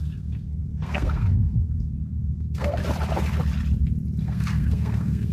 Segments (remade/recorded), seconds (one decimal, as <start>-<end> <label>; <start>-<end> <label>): 0.0-2.8 remade; 2.8-4.2 recorded; 4.2-5.3 remade